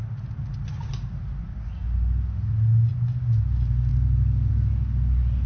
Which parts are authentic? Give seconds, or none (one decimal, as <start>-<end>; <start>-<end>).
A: 0.0-5.5